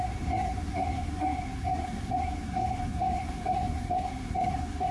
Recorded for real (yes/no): no